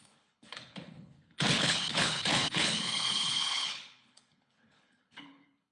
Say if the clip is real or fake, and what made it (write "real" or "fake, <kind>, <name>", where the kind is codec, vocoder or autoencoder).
fake, codec, HILCodec